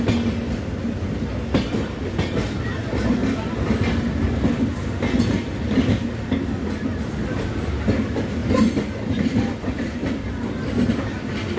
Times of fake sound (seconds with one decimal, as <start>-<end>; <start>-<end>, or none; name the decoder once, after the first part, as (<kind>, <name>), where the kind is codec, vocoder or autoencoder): none